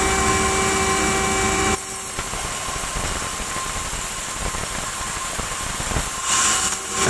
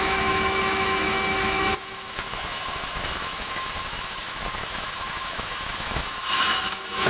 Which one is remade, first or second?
second